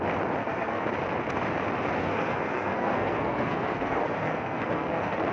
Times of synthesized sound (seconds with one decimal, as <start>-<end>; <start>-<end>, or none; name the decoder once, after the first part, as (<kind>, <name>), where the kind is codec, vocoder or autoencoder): 0.4-0.9 (codec, SNAC); 2.0-5.3